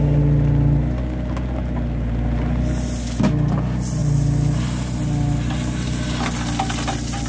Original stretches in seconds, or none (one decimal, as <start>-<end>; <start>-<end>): 0.0-7.3

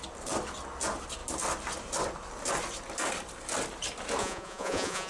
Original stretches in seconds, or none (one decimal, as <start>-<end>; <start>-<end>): 0.0-4.2

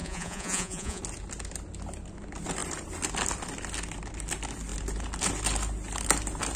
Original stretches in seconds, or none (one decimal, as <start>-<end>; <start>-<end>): 1.0-6.6

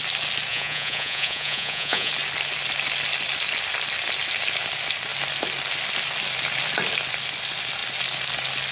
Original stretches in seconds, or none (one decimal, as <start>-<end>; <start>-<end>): 0.0-0.5; 2.1-8.7